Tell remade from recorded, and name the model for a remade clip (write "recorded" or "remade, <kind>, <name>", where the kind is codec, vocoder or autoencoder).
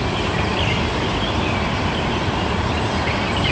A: recorded